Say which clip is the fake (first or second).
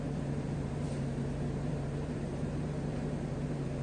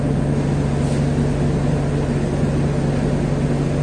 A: first